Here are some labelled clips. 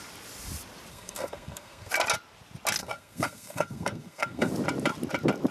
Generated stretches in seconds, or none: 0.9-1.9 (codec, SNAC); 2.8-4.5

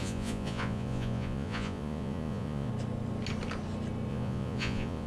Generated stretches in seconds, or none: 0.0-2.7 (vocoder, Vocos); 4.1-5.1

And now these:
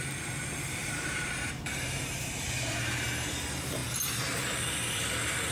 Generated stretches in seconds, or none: 0.0-3.8 (vocoder, BigVGAN v2); 4.9-5.5

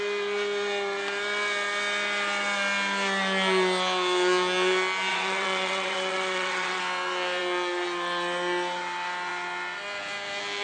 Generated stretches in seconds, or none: 5.1-6.8 (vocoder, WaveNeXt)

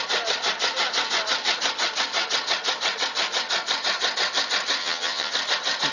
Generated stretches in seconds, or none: 4.8-5.3 (vocoder, HiFi-GAN)

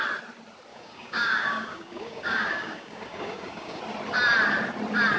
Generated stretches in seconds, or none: 0.7-3.8 (codec, DAC)